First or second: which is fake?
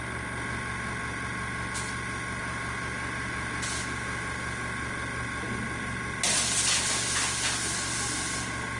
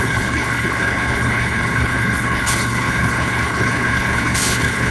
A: second